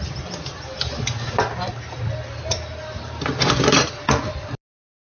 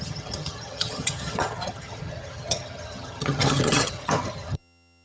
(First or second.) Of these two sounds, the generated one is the second